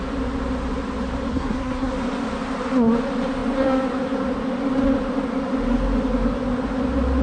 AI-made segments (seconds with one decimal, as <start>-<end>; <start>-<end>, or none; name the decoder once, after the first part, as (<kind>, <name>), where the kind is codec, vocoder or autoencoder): 1.3-1.9 (codec, SNAC)